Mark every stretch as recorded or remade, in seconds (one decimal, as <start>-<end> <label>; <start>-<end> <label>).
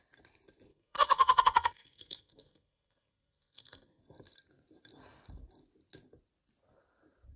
0.0-0.7 recorded; 0.7-4.0 remade; 4.0-7.4 recorded